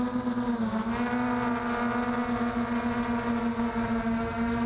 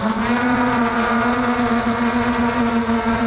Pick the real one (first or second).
first